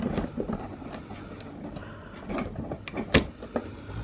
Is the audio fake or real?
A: real